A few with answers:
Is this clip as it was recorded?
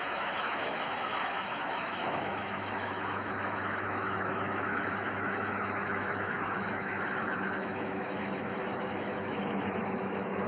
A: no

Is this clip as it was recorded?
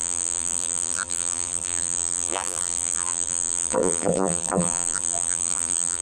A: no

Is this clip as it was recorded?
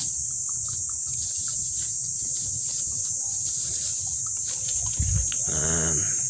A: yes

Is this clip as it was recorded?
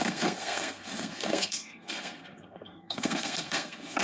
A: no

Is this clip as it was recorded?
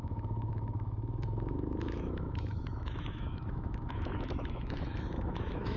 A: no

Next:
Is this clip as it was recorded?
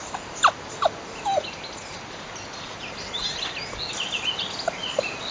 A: yes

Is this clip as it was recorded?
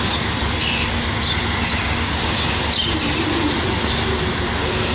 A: yes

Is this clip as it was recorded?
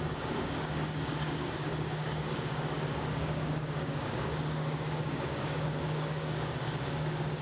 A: no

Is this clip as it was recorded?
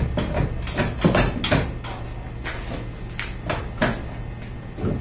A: yes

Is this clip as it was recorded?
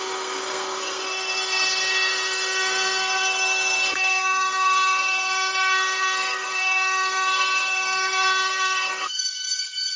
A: no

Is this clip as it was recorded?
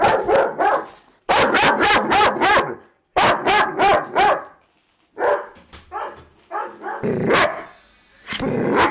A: yes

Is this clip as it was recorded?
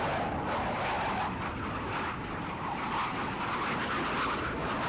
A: yes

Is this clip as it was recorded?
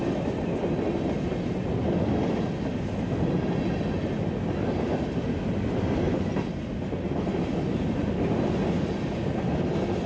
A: yes